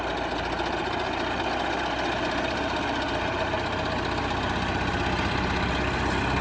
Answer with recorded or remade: recorded